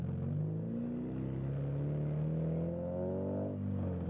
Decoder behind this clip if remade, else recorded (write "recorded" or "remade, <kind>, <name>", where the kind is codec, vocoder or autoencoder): recorded